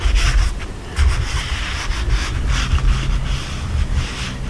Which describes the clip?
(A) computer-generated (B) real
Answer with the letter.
B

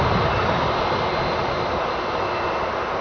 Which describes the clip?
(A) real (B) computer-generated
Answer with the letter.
A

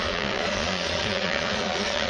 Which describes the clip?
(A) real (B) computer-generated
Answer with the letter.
B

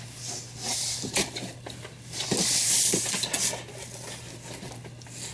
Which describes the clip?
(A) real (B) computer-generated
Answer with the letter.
A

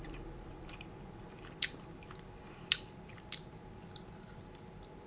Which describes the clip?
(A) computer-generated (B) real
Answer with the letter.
A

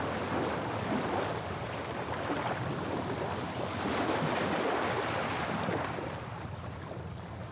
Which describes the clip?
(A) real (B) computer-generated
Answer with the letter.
A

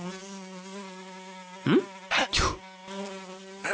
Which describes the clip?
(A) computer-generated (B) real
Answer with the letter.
B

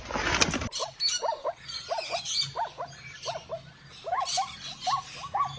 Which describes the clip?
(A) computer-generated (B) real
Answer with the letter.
B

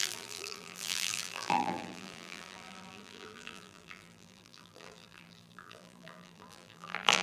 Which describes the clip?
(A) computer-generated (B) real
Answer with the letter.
A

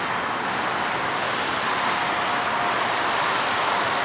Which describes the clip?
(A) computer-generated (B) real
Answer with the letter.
B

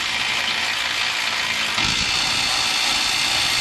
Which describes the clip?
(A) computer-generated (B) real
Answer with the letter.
B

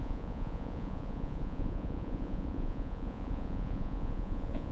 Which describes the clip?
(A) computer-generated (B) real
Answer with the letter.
A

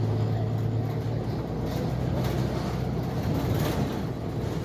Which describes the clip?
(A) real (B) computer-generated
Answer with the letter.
A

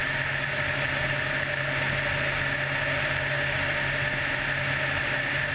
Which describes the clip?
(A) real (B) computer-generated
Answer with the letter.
A